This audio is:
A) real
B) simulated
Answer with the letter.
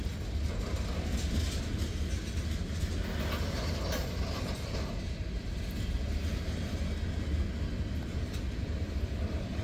A